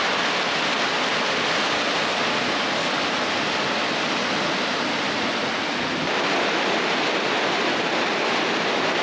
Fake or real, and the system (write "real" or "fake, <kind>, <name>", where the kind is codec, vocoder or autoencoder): real